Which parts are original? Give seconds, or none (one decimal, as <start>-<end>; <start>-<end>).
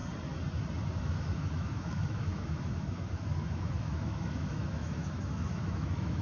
0.0-1.0